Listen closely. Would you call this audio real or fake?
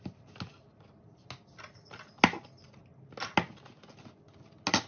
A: real